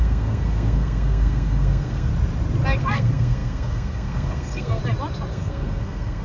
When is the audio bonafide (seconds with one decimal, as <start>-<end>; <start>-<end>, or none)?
2.1-2.8; 4.8-5.3